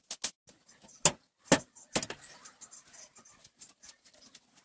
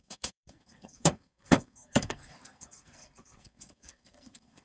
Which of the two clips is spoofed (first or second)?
second